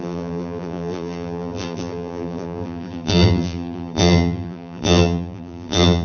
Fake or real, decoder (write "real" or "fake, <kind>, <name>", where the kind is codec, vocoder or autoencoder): fake, vocoder, BigVGAN v2